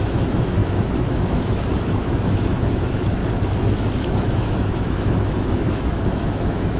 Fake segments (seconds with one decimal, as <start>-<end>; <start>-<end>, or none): 0.0-3.2; 4.0-6.8